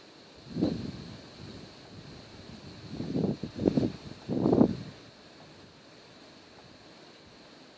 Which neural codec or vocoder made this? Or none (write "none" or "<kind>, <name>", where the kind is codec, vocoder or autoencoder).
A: none